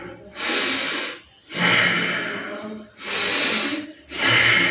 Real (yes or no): yes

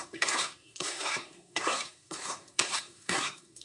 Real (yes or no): no